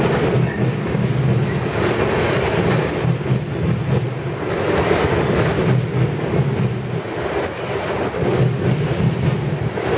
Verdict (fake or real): real